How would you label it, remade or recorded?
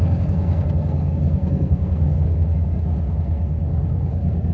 remade